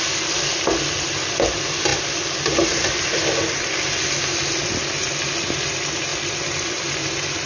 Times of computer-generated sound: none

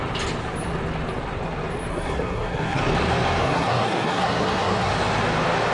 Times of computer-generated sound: 1.9-2.8 (codec, SNAC); 3.4-4.9

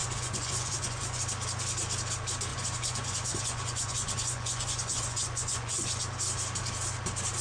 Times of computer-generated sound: 0.0-1.2 (vocoder, Vocos); 2.5-6.0

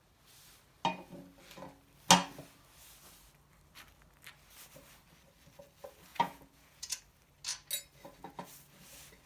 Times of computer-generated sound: 6.1-7.0 (vocoder, Vocos)

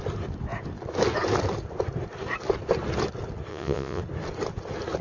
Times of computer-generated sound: 3.5-4.0 (vocoder, Vocos)